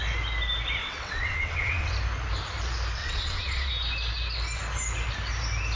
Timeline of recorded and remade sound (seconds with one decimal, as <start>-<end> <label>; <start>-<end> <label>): 0.0-0.8 recorded; 0.8-1.9 remade; 1.9-3.0 recorded; 3.0-3.7 remade; 3.7-5.8 recorded